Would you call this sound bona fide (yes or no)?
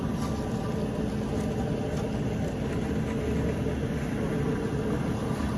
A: yes